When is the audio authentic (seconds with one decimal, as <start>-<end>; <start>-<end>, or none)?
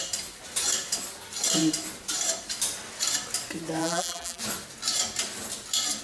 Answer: 0.0-3.8; 4.4-6.0